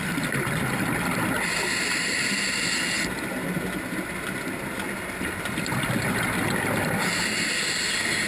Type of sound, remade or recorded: recorded